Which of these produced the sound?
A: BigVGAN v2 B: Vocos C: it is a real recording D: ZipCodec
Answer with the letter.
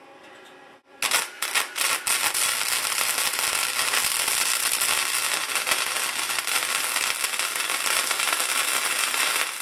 C